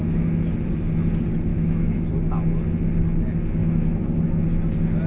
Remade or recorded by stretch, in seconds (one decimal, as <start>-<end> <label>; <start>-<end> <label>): 0.0-1.5 recorded; 1.5-2.1 remade; 2.1-3.6 recorded; 3.6-4.2 remade; 4.2-5.1 recorded